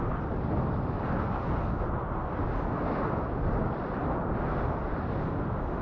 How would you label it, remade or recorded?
recorded